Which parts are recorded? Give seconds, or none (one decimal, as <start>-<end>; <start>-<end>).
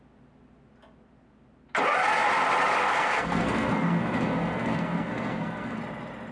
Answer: 0.0-2.8; 5.8-6.3